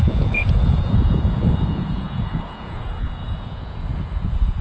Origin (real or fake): fake